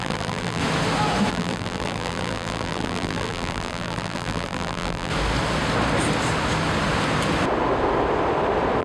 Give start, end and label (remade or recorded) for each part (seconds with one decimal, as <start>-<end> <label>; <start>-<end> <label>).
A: 0.0-0.6 remade; 0.6-1.3 recorded; 1.3-5.1 remade; 5.1-8.8 recorded